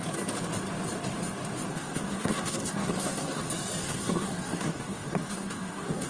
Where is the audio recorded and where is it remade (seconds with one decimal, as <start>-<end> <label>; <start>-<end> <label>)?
0.0-1.7 recorded; 1.7-3.4 remade; 3.4-3.8 recorded; 3.8-6.1 remade